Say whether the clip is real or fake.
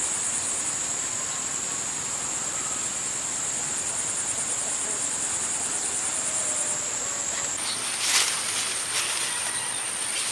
real